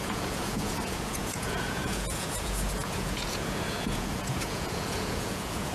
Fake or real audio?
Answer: fake